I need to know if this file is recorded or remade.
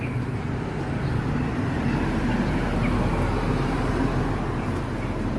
recorded